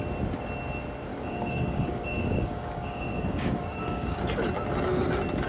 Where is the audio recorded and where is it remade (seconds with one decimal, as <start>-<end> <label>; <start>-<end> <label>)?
0.0-1.1 recorded; 1.1-4.2 remade; 4.2-5.5 recorded